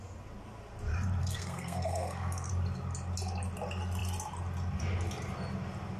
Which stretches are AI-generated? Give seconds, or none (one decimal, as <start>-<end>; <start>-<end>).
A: 1.2-2.5